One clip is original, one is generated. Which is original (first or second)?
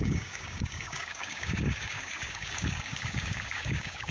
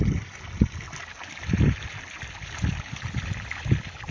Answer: second